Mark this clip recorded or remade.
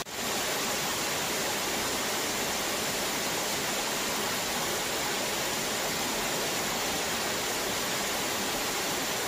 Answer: recorded